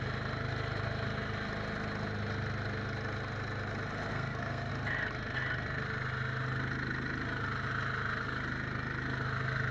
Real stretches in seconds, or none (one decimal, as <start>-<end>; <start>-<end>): 0.0-4.1; 4.7-9.7